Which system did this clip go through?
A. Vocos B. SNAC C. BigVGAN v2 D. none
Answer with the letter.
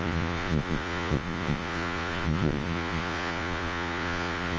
A